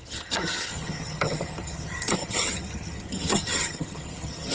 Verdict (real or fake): fake